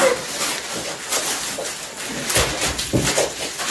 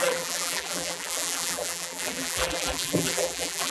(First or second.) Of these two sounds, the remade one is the second